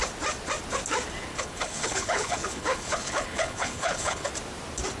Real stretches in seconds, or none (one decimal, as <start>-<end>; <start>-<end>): 0.0-1.3; 4.3-5.0